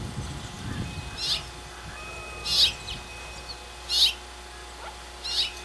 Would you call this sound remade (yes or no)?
no